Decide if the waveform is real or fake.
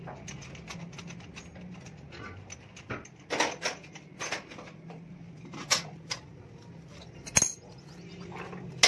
real